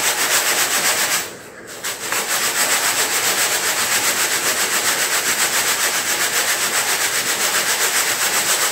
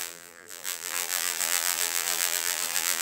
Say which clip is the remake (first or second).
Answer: second